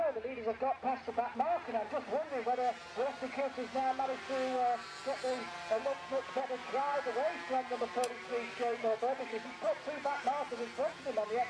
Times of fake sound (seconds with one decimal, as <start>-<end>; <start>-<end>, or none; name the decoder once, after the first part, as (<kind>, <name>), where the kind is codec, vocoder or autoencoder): 6.6-7.1 (vocoder, BigVGAN v2)